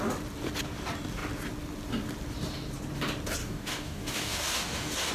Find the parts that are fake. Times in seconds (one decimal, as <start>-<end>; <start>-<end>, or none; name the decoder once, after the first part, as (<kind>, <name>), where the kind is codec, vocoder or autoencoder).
3.4-5.1 (codec, DAC)